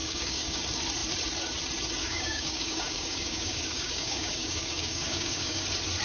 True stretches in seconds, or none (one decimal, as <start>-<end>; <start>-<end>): 0.6-2.0; 5.6-6.0